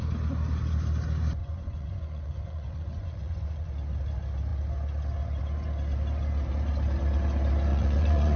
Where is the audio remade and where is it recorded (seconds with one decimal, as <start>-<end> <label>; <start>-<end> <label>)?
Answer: 0.0-1.4 recorded; 1.4-3.7 remade; 3.7-7.7 recorded; 7.7-8.4 remade